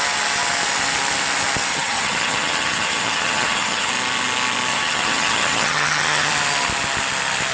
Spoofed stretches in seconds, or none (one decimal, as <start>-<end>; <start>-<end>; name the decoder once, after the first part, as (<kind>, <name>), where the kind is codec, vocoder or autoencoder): 1.7-3.9 (vocoder, HiFi-GAN); 4.7-6.3